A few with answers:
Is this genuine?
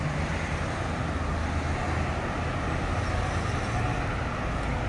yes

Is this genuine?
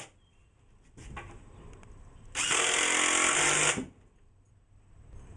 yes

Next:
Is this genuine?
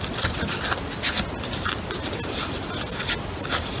yes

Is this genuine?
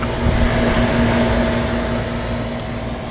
yes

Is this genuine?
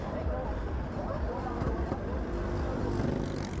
yes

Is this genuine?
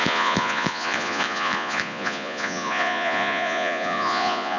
no